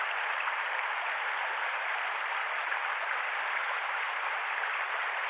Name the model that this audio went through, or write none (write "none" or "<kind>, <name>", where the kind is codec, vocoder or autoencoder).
vocoder, BigVGAN v2